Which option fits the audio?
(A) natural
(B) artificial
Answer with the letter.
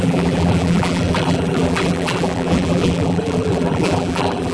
B